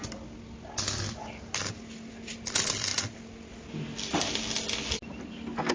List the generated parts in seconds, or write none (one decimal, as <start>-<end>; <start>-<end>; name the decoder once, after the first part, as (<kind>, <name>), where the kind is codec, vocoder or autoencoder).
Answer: none